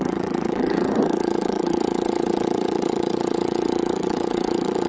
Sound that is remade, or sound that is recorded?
remade